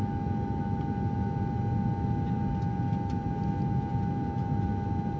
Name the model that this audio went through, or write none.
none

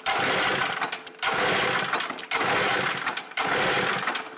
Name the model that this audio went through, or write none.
none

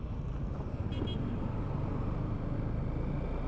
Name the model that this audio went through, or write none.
none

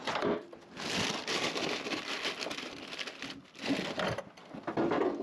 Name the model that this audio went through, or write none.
none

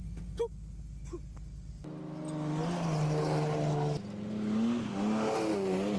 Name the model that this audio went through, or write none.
none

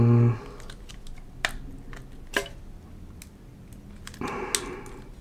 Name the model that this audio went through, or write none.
none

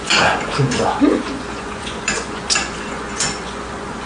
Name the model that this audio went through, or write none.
vocoder, Vocos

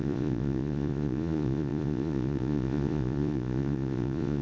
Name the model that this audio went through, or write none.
vocoder, Vocos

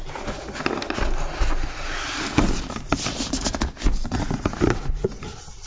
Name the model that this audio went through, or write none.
none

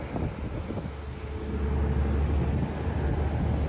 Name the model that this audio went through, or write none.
none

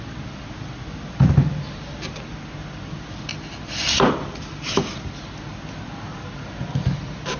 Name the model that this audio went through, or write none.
none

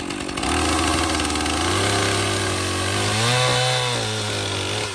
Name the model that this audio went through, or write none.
none